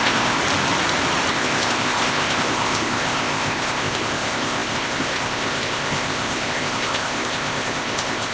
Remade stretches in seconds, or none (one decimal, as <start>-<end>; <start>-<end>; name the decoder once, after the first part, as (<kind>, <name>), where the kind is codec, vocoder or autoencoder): 0.0-0.4 (codec, ZipCodec); 1.3-8.3